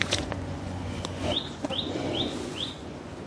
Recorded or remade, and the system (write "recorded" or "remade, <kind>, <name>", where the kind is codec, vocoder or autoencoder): remade, vocoder, Vocos